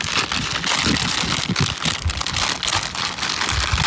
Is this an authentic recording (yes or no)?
yes